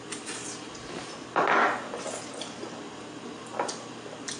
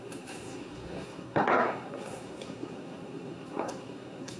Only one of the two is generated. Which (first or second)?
second